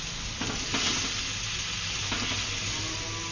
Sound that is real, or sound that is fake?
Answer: real